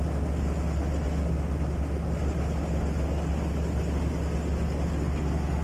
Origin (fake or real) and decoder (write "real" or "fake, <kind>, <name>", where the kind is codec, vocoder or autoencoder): real